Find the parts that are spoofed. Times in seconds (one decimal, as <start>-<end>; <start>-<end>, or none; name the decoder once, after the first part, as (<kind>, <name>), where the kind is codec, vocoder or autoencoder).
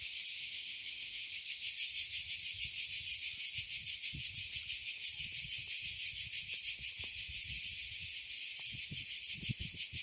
0.4-1.2 (autoencoder, DAC-VAE)